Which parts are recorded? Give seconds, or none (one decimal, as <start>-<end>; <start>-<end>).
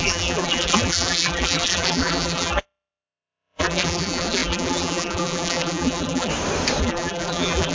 6.3-6.8